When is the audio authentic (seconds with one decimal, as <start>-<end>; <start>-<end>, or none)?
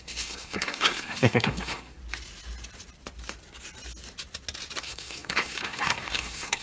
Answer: 2.0-4.8